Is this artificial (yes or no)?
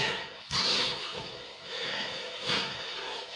yes